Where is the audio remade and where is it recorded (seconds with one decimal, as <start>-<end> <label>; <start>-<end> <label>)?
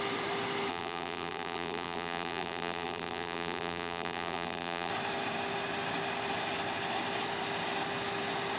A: 0.0-0.7 recorded; 0.7-4.9 remade; 4.9-8.6 recorded